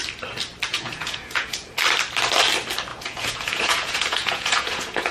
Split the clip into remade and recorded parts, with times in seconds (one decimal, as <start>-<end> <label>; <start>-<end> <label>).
0.0-0.7 recorded; 0.7-1.7 remade; 1.7-2.9 recorded; 2.9-5.1 remade